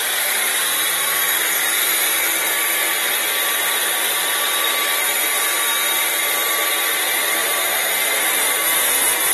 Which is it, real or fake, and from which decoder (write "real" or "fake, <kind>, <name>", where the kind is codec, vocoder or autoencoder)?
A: real